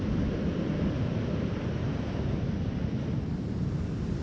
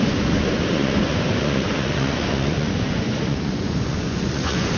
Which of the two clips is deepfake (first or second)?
second